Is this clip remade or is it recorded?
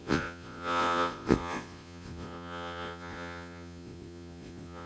remade